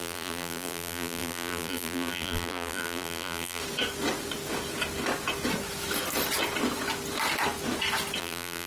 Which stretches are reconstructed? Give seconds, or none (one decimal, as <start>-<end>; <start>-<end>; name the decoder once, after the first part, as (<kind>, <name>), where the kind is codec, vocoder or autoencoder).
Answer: 0.0-3.6 (vocoder, BigVGAN v2); 8.2-8.7